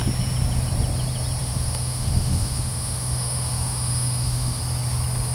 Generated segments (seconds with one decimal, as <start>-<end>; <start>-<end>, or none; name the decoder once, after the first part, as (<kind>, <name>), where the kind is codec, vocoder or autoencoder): 1.4-4.6 (autoencoder, DAC-VAE)